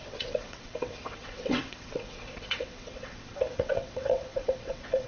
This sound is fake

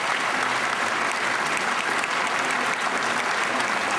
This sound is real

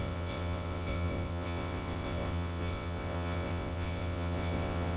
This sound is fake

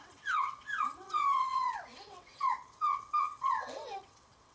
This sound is fake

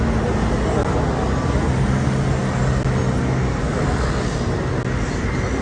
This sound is real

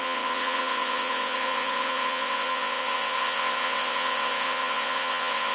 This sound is fake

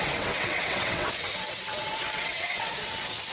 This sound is fake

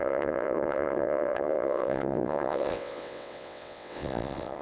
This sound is fake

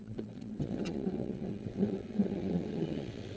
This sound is fake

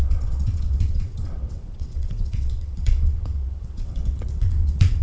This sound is fake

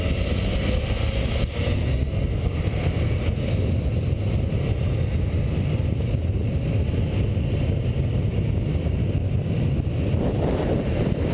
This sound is real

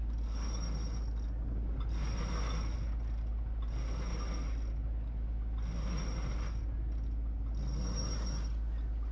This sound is real